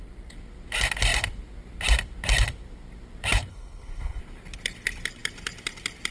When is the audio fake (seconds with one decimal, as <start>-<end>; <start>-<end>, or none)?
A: 3.5-4.2